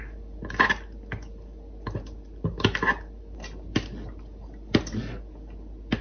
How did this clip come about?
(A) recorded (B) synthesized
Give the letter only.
A